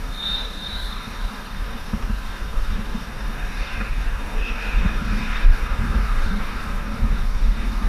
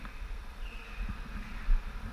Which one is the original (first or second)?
second